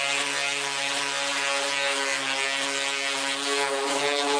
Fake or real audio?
real